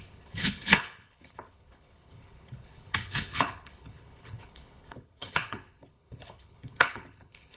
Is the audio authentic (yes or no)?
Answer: no